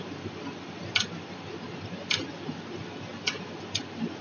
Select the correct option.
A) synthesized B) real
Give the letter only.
B